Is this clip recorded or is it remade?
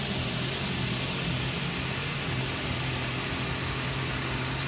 recorded